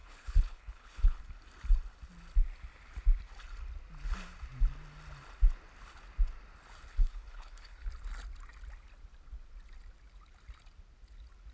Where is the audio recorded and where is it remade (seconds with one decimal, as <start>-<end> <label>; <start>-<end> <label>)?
0.0-1.2 remade; 1.2-6.9 recorded; 6.9-7.9 remade; 7.9-11.5 recorded